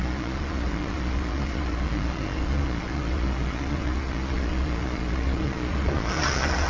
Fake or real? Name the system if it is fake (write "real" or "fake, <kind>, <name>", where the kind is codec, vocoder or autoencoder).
fake, vocoder, Vocos